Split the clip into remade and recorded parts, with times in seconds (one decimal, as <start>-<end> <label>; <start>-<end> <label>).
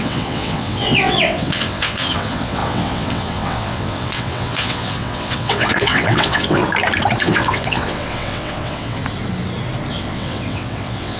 0.0-6.6 remade; 6.6-7.2 recorded; 7.2-9.0 remade; 9.0-9.9 recorded; 9.9-11.2 remade